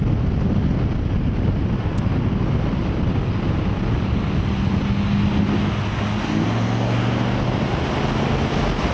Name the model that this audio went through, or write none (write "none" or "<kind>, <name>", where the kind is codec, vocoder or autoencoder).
none